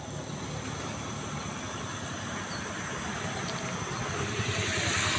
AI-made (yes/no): no